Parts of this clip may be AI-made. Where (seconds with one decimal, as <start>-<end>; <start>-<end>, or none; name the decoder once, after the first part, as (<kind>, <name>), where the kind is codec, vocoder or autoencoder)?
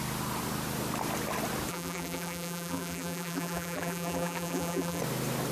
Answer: 1.7-5.0 (vocoder, BigVGAN v2)